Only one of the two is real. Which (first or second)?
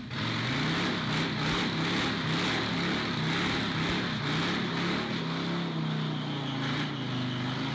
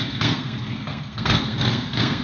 first